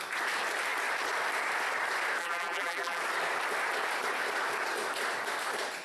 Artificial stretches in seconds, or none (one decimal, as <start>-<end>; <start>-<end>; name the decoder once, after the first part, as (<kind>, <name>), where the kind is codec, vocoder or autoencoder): 2.2-3.0 (vocoder, BigVGAN v2)